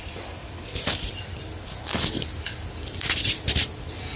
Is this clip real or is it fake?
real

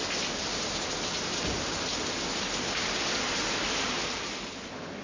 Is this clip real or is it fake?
real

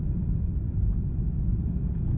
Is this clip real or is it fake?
real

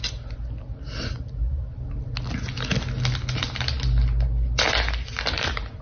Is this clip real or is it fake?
real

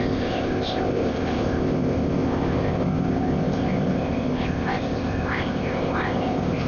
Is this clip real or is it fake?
fake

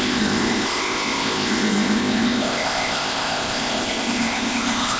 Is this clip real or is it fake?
fake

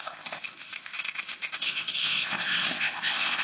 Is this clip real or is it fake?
fake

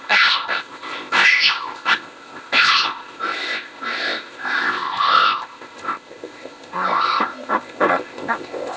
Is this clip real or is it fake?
fake